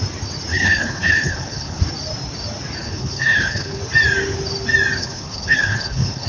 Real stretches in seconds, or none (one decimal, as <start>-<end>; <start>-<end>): 0.0-0.5; 1.8-2.8; 3.8-5.0